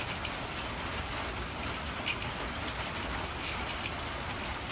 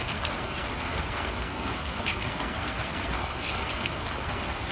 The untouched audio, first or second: first